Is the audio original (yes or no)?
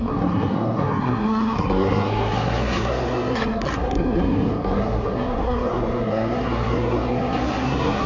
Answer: no